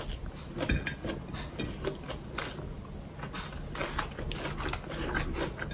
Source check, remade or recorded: recorded